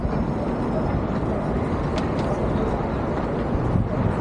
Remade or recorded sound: recorded